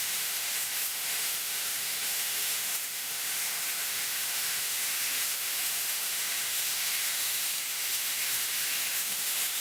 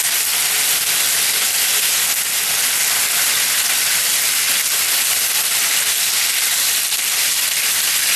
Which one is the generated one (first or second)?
first